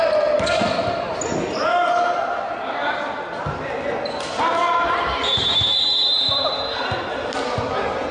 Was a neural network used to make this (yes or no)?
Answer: no